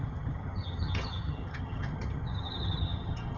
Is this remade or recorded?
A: remade